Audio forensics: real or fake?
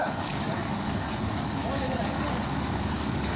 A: fake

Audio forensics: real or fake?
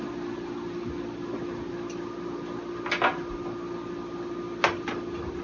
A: real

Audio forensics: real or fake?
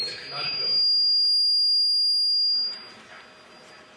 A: real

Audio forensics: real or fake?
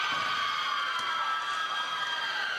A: real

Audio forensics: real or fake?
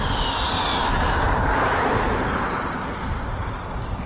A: real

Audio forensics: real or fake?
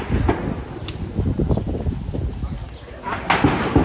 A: real